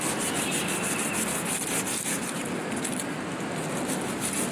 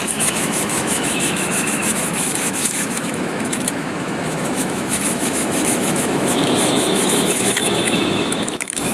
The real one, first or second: first